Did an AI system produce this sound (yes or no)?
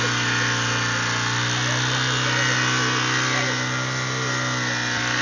no